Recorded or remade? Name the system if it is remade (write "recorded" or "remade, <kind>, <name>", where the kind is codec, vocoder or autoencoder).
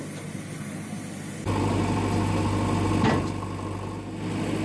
recorded